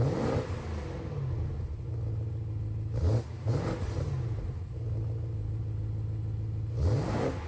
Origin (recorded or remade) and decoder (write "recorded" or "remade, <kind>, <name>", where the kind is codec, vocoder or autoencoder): recorded